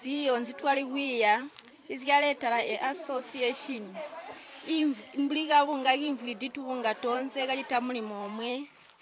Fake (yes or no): yes